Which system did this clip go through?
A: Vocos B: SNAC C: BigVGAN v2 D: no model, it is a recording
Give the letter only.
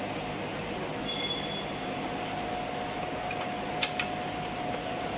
D